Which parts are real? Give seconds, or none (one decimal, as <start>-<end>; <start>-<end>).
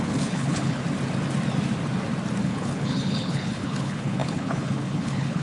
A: 0.8-2.4